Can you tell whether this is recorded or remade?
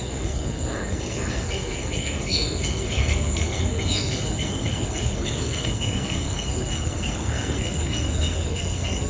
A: remade